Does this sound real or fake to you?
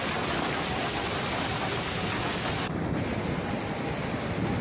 real